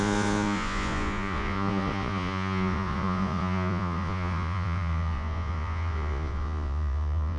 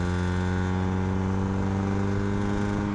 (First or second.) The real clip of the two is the second